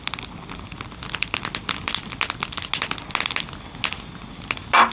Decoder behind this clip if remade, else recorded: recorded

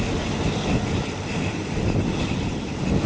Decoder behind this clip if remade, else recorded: recorded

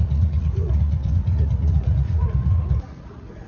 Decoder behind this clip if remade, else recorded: remade, vocoder, Vocos